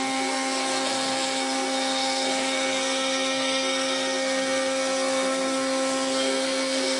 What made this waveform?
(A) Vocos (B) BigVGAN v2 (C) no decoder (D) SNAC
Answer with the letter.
D